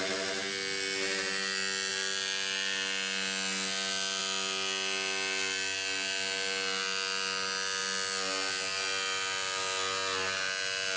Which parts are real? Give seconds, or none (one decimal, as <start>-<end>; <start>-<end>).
0.0-11.0